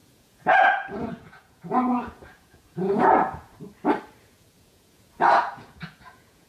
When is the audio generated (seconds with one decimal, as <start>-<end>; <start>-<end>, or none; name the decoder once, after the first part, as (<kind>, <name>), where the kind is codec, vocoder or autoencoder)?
0.0-3.5 (vocoder, Vocos); 4.2-6.5